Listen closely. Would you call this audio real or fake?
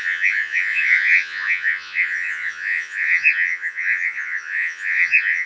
fake